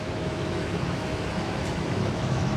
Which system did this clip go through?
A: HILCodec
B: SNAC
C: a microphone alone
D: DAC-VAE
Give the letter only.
D